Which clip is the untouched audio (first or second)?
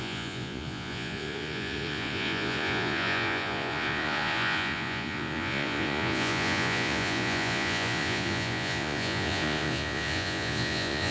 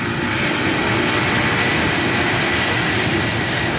second